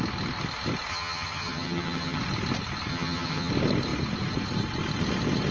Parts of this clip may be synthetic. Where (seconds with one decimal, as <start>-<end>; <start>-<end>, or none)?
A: 0.9-2.2; 2.9-3.5